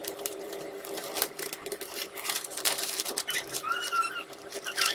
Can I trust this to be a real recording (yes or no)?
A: no